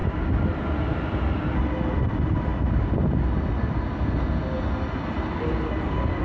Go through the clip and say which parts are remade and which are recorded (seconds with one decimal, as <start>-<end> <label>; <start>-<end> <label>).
0.0-6.2 recorded

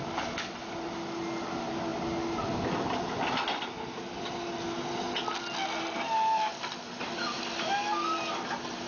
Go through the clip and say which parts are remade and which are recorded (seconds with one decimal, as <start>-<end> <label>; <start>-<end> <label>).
0.0-8.9 recorded

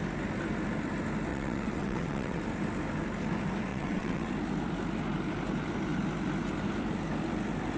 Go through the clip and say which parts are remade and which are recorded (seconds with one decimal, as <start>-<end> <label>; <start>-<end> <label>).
0.0-1.3 recorded; 1.3-2.4 remade; 2.4-3.7 recorded; 3.7-4.3 remade; 4.3-7.8 recorded

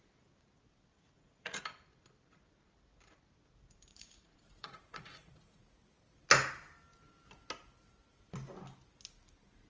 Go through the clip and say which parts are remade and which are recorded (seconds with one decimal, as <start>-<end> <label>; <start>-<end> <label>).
0.0-0.9 recorded; 0.9-1.6 remade; 1.6-3.9 recorded; 3.9-5.6 remade; 5.6-9.7 recorded

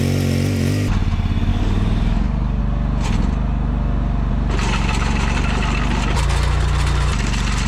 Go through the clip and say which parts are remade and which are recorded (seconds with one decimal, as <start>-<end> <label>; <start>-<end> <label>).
0.0-1.5 recorded; 1.5-2.6 remade; 2.6-7.7 recorded

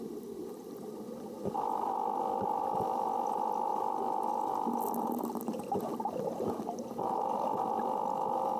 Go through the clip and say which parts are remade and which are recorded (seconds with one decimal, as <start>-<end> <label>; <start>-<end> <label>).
0.0-8.6 remade

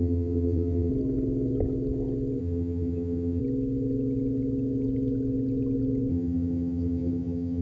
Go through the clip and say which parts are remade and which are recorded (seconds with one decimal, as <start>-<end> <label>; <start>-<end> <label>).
0.0-0.9 remade; 0.9-2.4 recorded; 2.4-3.4 remade; 3.4-6.1 recorded; 6.1-7.6 remade